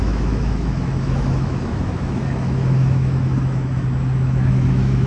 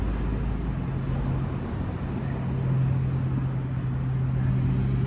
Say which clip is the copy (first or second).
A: first